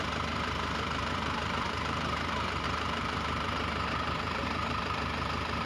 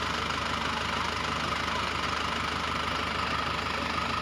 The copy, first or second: first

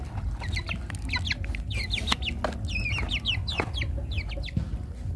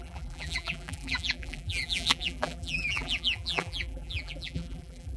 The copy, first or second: second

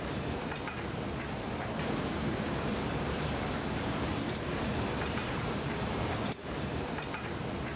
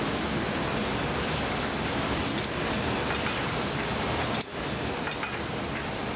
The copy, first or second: first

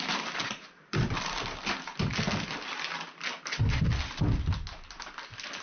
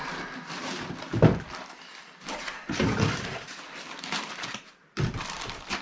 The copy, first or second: second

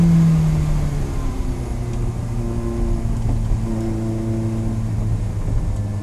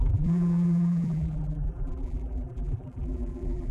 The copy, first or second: second